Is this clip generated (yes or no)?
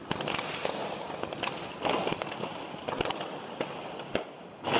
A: no